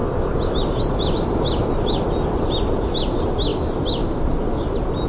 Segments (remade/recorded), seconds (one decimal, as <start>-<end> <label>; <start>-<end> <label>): 0.0-5.1 recorded